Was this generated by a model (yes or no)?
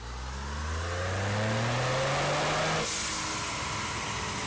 no